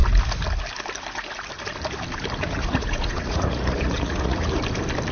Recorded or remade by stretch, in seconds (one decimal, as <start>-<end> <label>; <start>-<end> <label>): 0.0-2.4 recorded; 2.4-4.6 remade; 4.6-5.1 recorded